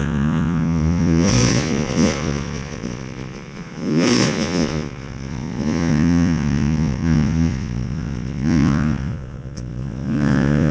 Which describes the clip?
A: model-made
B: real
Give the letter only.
A